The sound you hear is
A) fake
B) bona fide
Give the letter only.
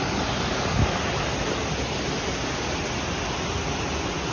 B